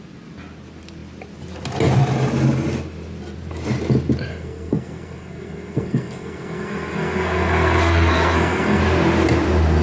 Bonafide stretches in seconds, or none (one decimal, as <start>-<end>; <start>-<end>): 0.0-4.3; 8.8-9.8